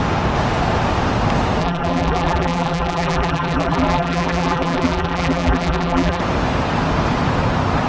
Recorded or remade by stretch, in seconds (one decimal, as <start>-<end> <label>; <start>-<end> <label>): 0.0-1.6 recorded; 1.6-6.2 remade; 6.2-7.9 recorded